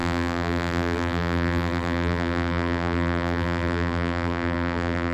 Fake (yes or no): yes